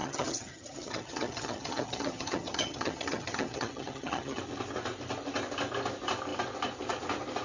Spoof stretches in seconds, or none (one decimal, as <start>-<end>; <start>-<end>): 0.0-4.4